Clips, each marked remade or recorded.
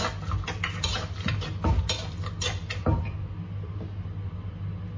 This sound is recorded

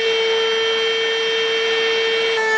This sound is recorded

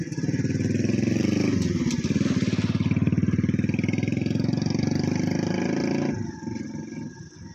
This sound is recorded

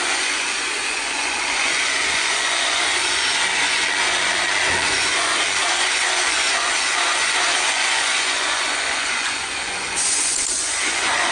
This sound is remade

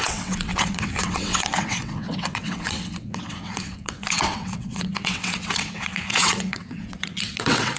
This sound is remade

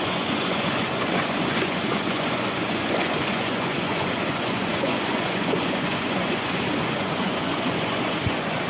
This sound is remade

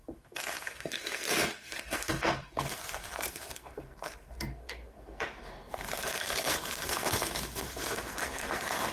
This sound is remade